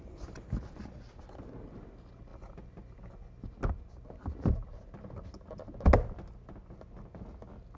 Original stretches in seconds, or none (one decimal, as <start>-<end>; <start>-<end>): 0.0-7.8